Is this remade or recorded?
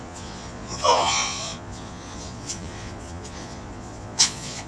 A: remade